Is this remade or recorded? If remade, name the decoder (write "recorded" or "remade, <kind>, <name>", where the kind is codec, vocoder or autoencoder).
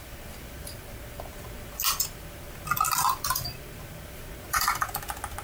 recorded